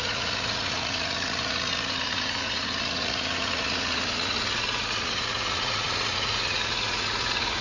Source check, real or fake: fake